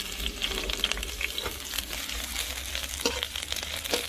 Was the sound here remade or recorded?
recorded